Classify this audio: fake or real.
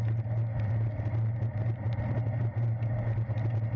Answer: real